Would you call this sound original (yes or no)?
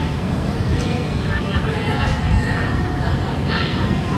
no